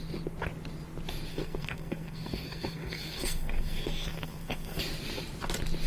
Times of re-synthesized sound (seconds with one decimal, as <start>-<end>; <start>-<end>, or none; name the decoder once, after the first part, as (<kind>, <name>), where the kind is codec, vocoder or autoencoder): 1.3-4.8 (codec, SNAC)

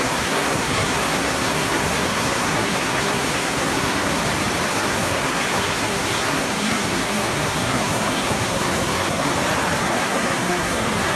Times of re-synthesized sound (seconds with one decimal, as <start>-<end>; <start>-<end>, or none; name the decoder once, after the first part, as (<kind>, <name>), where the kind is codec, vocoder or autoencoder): 0.0-4.2 (codec, SNAC); 4.7-9.3; 9.8-11.2

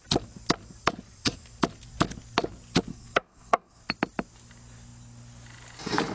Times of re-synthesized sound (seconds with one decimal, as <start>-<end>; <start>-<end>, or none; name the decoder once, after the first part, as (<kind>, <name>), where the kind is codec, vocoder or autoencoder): 2.9-3.8 (codec, SNAC)

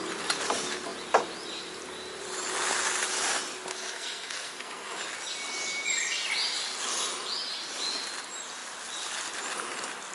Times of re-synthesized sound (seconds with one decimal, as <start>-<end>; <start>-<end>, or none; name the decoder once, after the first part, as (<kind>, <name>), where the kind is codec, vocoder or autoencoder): 3.7-5.0 (codec, SNAC)

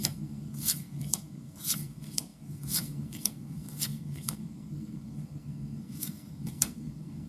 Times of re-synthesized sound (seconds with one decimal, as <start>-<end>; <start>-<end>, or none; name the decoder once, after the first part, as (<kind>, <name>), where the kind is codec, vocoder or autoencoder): 0.0-7.3 (codec, SNAC)

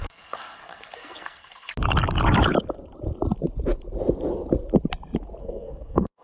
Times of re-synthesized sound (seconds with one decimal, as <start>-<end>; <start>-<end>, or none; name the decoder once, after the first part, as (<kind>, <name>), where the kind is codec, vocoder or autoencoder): 0.0-1.7 (codec, SNAC); 5.4-6.2

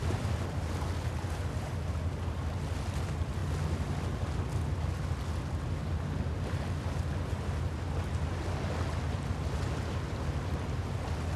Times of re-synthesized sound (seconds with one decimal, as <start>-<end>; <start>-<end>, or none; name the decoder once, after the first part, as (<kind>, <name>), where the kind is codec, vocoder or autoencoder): none

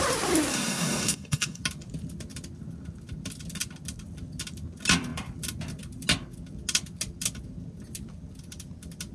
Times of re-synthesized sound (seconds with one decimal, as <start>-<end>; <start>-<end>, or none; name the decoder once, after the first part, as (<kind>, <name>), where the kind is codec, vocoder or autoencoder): 0.5-1.6 (codec, SNAC)